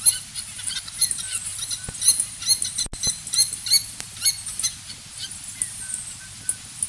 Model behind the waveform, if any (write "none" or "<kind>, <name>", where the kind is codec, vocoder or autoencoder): none